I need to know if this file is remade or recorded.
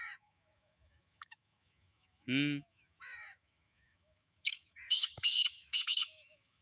remade